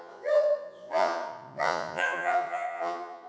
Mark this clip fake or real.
fake